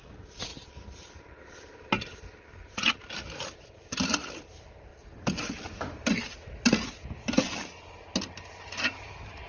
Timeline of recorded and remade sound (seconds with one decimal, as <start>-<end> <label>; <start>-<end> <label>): 0.0-9.5 recorded